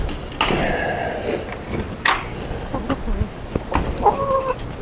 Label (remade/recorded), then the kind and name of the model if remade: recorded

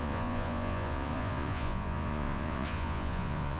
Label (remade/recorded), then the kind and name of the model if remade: remade, vocoder, Vocos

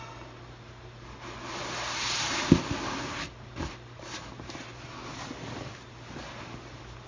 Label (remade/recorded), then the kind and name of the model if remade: recorded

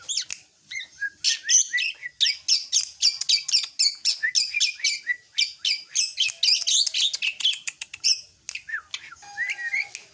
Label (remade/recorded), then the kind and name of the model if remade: recorded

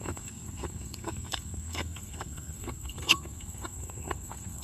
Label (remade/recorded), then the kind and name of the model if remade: remade, codec, SNAC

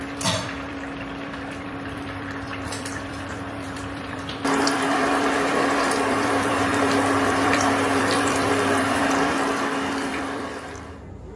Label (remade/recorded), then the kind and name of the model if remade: remade, vocoder, BigVGAN v2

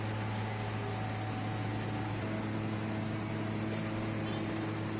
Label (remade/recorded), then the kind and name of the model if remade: recorded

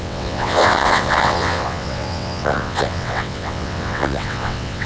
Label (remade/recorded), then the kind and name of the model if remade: remade, vocoder, WaveNeXt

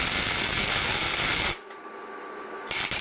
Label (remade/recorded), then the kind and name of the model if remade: recorded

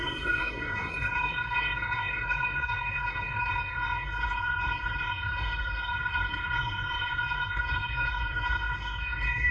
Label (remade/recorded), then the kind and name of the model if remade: remade, codec, SNAC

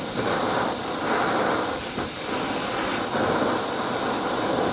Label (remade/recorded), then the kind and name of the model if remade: recorded